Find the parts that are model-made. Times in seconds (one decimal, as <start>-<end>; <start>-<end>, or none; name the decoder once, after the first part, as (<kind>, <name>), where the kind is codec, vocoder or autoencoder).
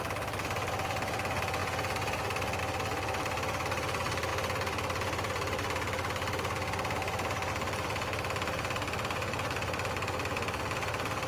none